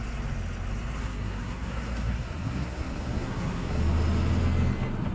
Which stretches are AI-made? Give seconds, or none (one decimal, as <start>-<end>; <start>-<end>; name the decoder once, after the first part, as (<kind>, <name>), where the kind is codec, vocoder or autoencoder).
1.0-3.8 (codec, SNAC)